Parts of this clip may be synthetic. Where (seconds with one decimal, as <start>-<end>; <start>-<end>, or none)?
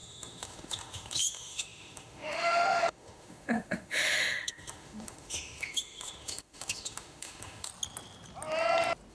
0.0-7.7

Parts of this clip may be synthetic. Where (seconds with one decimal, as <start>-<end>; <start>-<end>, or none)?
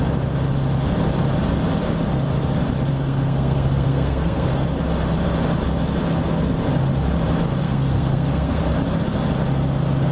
2.9-4.5; 7.6-8.6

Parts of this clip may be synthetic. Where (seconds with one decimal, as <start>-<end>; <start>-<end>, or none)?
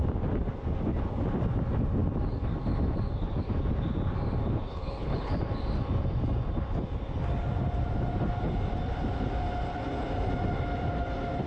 4.7-5.3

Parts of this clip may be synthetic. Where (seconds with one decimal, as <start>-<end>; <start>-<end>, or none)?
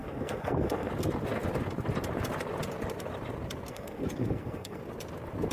0.0-0.9; 3.7-4.8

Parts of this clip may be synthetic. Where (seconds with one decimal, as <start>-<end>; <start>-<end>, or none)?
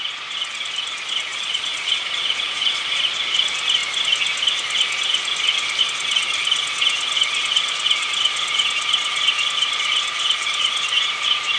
1.3-3.1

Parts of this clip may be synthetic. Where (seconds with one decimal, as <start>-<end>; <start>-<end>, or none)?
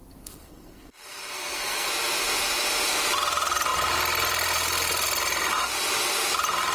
0.0-1.9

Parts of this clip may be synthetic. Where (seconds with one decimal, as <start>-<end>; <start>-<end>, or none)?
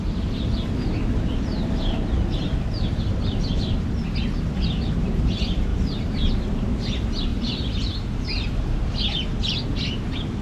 5.7-6.3; 7.3-8.2